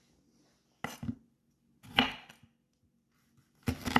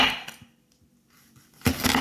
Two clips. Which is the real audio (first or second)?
first